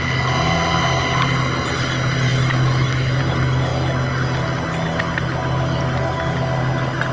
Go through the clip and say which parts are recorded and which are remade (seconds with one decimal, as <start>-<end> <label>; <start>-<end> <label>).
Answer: 0.0-2.3 recorded; 2.3-3.2 remade; 3.2-7.1 recorded